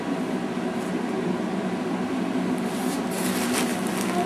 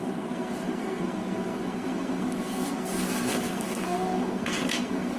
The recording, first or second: first